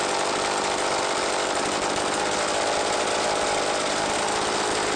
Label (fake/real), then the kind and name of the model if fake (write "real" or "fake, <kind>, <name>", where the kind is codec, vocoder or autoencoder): real